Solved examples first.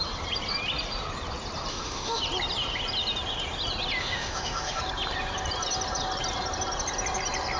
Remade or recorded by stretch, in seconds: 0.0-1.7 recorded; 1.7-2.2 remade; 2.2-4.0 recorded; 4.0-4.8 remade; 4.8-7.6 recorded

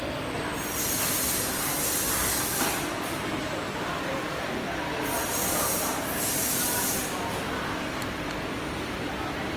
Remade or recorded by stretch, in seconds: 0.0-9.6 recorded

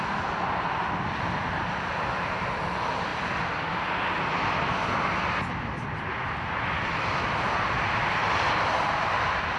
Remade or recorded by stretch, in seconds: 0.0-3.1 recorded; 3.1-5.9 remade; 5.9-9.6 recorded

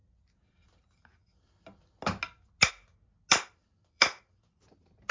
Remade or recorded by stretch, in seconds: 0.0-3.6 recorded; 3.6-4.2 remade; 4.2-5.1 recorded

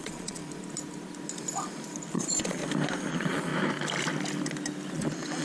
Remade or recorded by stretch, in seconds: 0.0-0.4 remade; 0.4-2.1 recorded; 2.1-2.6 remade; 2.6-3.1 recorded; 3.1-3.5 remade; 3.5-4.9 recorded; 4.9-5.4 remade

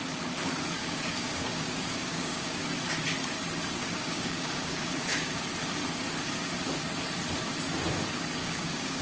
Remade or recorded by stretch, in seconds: 0.0-0.8 recorded; 0.8-2.6 remade; 2.6-3.8 recorded; 3.8-5.4 remade; 5.4-8.4 recorded; 8.4-9.0 remade

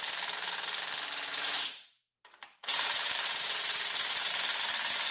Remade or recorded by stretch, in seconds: 0.0-1.3 recorded; 1.3-4.4 remade; 4.4-5.1 recorded

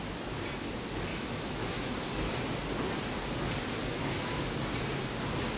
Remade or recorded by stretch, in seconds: 0.0-1.1 recorded; 1.1-2.0 remade; 2.0-5.6 recorded